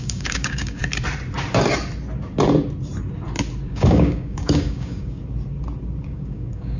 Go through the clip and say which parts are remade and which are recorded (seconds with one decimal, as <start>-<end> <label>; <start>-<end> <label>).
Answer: 0.0-0.8 remade; 0.8-3.7 recorded; 3.7-5.2 remade; 5.2-6.0 recorded; 6.0-6.8 remade